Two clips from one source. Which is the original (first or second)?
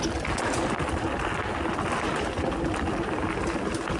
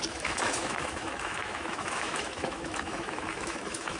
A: first